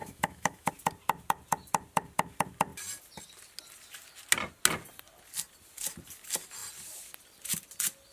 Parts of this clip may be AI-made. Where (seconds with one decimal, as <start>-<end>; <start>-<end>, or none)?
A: 0.0-0.7